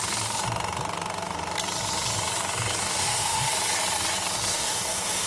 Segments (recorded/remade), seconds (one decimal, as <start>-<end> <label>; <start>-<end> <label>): 0.0-2.8 recorded; 2.8-3.5 remade; 3.5-4.5 recorded; 4.5-5.3 remade